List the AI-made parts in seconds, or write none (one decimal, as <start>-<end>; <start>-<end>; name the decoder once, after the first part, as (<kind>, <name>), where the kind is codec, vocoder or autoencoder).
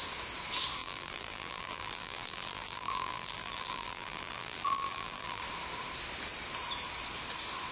0.8-5.4 (vocoder, BigVGAN v2)